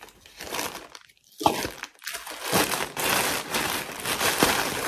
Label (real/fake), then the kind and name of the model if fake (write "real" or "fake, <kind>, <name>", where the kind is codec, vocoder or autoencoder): real